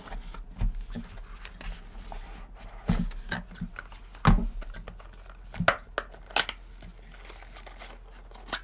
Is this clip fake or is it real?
real